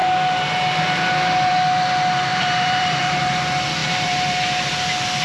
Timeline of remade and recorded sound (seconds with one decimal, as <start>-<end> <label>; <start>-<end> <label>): 0.0-2.3 recorded; 2.3-3.2 remade; 3.2-3.8 recorded; 3.8-4.7 remade; 4.7-5.2 recorded